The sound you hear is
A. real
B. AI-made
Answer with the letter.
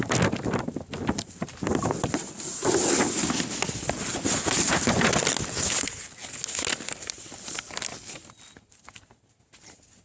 A